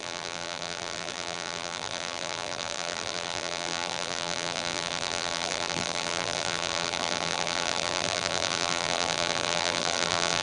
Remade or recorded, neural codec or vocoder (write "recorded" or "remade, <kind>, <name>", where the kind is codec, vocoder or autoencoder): remade, vocoder, BigVGAN v2